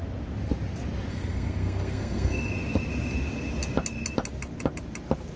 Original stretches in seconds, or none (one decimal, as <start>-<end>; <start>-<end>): 0.0-1.1; 2.5-5.4